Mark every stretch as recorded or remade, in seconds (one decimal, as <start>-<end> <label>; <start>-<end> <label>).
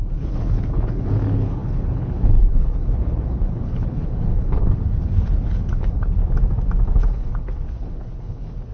0.0-6.2 remade; 6.2-7.1 recorded; 7.1-8.7 remade